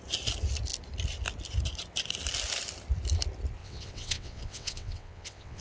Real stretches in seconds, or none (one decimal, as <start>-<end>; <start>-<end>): 0.0-3.6